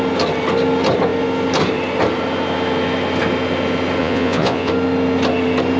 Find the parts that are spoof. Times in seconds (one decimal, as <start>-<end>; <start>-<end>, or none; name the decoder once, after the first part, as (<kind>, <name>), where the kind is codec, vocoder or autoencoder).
4.0-4.7 (vocoder, Vocos)

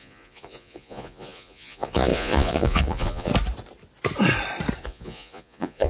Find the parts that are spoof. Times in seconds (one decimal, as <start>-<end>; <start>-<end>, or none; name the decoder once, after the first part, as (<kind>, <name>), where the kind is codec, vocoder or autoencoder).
0.0-3.3 (vocoder, Vocos); 4.8-5.9

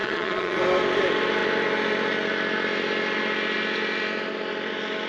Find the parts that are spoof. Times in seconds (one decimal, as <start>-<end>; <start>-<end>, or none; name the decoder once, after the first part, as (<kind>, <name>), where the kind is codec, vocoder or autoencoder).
0.0-0.6 (vocoder, Vocos)

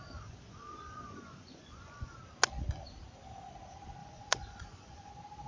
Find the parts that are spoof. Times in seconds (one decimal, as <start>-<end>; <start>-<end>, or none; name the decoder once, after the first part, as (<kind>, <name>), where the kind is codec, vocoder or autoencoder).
0.0-2.2 (vocoder, Vocos); 4.0-5.1